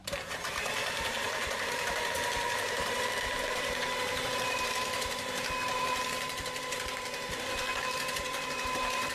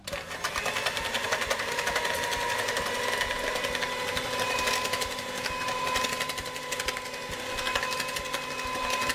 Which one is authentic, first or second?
second